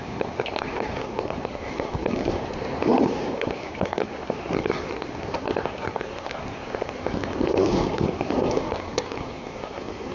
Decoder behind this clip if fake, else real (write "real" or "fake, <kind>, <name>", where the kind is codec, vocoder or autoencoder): fake, codec, SNAC